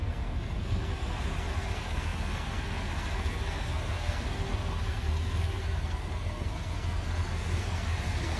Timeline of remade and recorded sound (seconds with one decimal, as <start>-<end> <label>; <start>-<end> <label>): 0.0-8.4 remade